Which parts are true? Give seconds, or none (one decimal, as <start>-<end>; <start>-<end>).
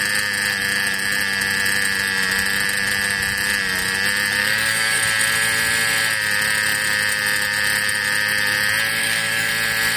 0.0-4.4; 5.0-9.0; 9.5-10.0